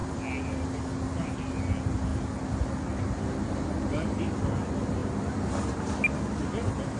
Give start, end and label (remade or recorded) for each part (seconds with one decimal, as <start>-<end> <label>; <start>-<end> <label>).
0.0-7.0 recorded